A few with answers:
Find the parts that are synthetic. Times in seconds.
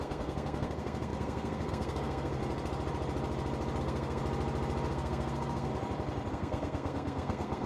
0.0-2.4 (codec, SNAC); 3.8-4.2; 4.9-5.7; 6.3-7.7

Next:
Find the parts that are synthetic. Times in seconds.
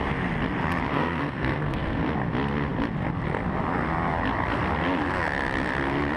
0.9-2.1 (codec, SNAC)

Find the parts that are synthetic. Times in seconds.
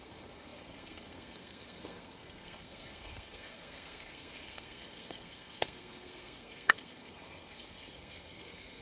0.0-8.8 (codec, SNAC)